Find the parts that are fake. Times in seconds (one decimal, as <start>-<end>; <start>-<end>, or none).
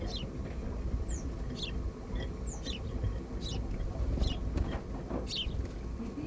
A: none